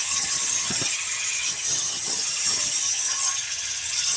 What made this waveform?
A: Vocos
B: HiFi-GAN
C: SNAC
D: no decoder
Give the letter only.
B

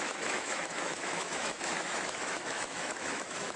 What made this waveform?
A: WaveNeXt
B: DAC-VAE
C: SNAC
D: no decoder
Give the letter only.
B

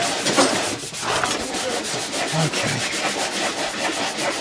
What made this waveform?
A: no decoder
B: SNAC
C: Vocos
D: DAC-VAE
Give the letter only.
A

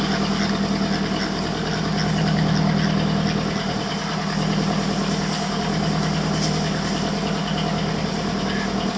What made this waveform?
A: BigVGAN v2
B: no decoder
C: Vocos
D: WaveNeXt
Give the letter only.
B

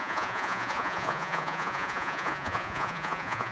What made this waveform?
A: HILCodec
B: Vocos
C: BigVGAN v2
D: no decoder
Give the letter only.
B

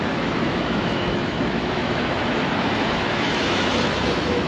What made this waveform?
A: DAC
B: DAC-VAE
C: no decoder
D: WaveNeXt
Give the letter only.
B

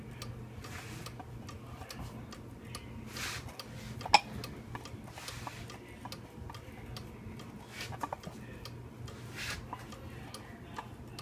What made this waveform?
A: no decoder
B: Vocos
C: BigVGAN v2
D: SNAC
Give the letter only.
A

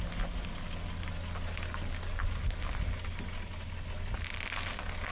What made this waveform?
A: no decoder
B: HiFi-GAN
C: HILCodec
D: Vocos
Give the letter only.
A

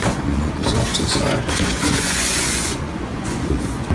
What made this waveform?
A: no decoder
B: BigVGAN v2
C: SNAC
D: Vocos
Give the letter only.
D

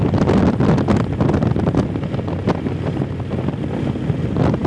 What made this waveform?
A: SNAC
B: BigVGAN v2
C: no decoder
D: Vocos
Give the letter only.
C